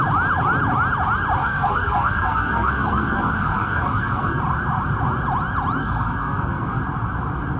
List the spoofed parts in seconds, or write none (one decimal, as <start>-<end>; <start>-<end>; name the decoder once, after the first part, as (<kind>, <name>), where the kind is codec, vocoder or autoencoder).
1.4-4.4 (codec, SNAC); 5.8-6.8